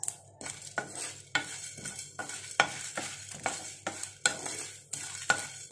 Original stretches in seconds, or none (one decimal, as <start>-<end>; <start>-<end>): 0.0-5.7